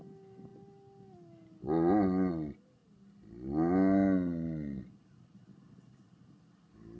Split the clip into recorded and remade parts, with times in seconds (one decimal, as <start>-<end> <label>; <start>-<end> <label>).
0.0-7.0 recorded